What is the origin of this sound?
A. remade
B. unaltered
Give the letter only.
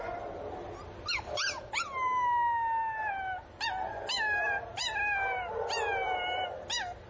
B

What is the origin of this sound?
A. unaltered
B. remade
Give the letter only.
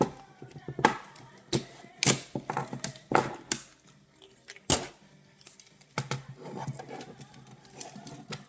A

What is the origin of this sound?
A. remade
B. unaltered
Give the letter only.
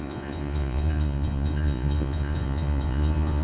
A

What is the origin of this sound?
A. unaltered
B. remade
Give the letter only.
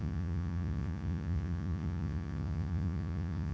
B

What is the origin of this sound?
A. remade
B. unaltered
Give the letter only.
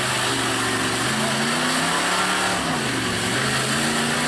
B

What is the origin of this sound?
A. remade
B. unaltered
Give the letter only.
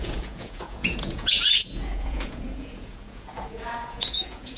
A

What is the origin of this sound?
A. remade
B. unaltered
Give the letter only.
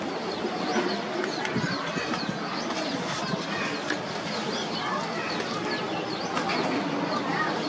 B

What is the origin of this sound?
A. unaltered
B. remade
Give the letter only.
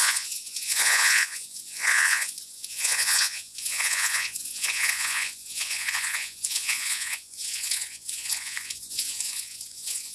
B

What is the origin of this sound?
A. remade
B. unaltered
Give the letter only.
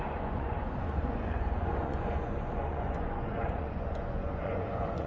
A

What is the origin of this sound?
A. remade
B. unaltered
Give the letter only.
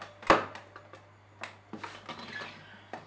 B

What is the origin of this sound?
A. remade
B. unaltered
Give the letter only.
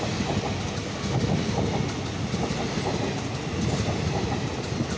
B